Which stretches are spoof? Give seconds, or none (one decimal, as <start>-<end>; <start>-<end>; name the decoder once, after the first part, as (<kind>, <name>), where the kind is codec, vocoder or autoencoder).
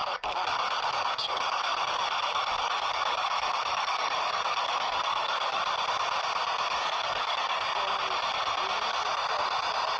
0.0-5.6 (codec, DAC); 6.8-7.7